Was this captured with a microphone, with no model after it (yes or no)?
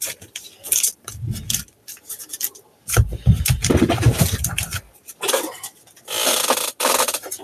no